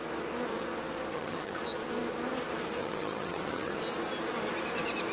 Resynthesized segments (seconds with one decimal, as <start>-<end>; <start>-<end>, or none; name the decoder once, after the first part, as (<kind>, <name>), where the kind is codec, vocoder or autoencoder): 1.1-1.6 (vocoder, HiFi-GAN); 2.8-3.8

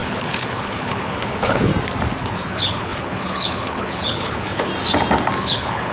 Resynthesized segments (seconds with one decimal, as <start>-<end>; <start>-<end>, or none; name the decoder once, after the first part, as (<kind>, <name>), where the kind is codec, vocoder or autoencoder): 0.0-1.7 (codec, HILCodec); 2.2-4.7; 5.4-5.9

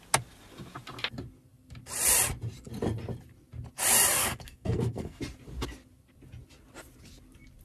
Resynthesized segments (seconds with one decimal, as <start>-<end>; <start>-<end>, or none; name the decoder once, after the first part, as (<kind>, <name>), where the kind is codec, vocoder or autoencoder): 4.2-5.2 (codec, SNAC)

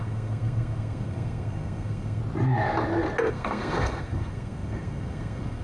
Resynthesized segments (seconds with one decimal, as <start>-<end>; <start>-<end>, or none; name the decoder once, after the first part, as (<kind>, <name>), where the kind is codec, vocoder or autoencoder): 0.0-2.2 (codec, SNAC); 3.3-5.6

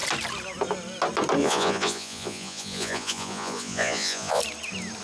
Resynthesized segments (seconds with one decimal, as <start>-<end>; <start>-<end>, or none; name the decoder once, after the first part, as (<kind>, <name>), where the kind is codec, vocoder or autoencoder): 1.4-4.4 (vocoder, Vocos)

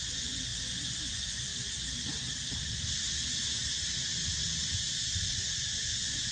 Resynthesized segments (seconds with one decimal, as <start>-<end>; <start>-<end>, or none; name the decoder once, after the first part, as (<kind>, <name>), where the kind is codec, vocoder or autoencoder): 0.0-1.5 (vocoder, Vocos); 5.3-6.3

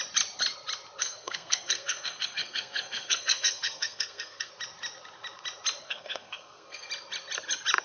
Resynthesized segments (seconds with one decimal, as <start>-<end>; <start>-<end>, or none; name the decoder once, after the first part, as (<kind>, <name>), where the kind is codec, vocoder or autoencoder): 1.0-4.5 (codec, SNAC); 5.8-6.9